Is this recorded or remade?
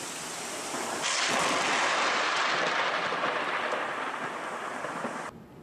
recorded